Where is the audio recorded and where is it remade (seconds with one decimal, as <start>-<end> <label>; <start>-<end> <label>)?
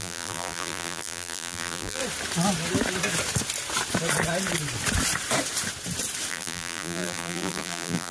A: 0.0-2.0 remade; 2.0-6.3 recorded; 6.3-8.1 remade